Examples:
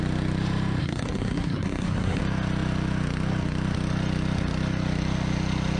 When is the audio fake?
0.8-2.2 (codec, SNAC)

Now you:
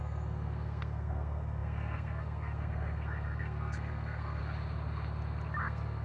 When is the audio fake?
0.0-4.4 (codec, SNAC); 5.6-6.0

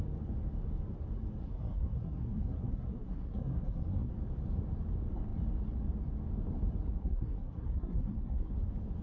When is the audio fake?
1.4-4.1 (codec, SNAC); 7.0-8.5